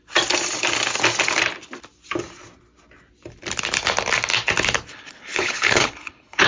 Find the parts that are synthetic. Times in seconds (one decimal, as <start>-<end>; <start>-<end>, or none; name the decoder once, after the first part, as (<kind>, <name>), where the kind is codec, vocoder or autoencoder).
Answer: 4.9-6.5 (codec, HILCodec)